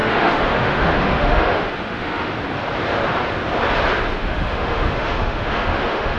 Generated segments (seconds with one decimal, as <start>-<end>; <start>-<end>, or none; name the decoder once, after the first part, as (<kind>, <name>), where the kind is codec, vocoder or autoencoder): 0.0-2.3 (autoencoder, DAC-VAE); 4.2-6.2